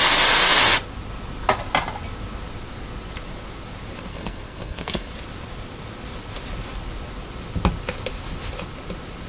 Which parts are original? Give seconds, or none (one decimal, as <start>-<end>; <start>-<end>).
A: 0.0-4.1; 5.1-9.3